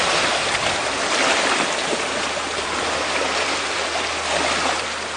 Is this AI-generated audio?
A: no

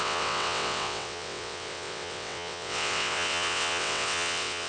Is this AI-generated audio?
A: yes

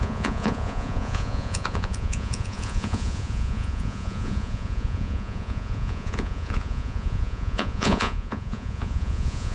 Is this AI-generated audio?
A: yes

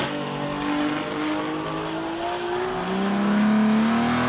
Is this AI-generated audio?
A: no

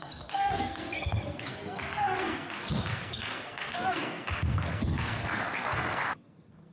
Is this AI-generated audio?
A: yes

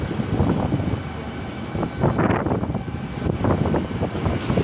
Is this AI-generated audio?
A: no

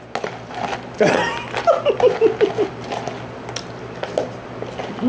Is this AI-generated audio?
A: no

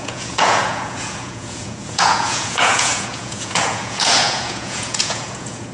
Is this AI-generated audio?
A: yes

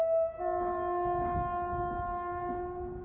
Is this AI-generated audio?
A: no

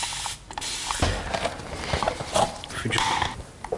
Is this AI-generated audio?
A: no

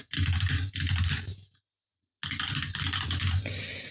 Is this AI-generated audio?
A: no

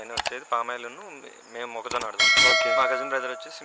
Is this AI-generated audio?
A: yes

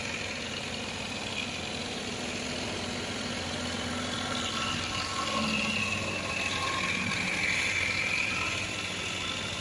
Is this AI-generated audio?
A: no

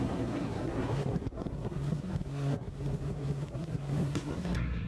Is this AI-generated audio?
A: yes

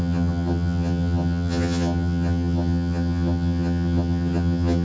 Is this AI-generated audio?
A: yes